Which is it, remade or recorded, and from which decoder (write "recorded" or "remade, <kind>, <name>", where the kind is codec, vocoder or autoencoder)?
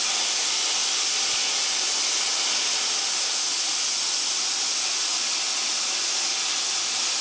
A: recorded